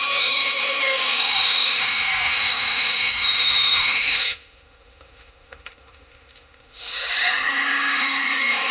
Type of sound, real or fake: fake